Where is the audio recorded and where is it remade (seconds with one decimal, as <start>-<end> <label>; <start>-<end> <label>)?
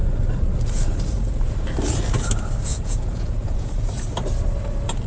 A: 0.0-2.7 recorded; 2.7-3.7 remade; 3.7-5.1 recorded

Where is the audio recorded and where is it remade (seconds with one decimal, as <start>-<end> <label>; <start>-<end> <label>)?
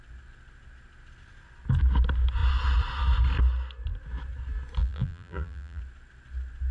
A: 0.0-4.8 recorded; 4.8-5.8 remade; 5.8-6.7 recorded